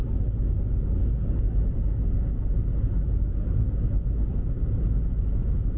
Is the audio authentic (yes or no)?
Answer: yes